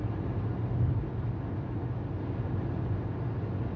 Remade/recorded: recorded